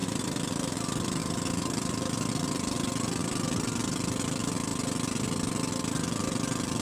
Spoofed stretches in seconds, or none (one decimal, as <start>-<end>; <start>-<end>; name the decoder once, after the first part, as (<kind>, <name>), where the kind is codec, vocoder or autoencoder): 0.0-4.7 (vocoder, BigVGAN v2); 6.1-6.8